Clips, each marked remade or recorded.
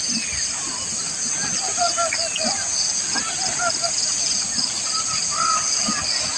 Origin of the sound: recorded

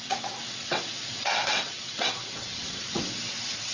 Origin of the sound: remade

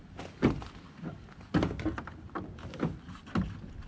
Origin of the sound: recorded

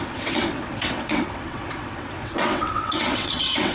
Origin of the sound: remade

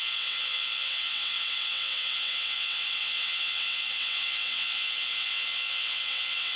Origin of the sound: remade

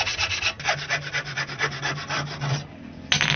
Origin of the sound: recorded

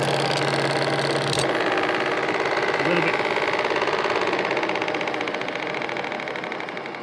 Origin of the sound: recorded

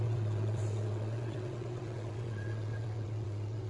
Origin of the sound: remade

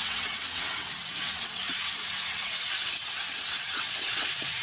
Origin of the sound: remade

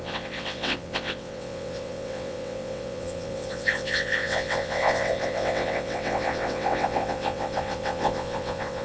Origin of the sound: remade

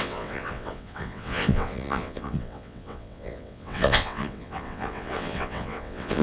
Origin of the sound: remade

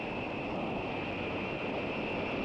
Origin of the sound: recorded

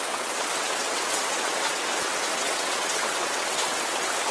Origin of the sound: remade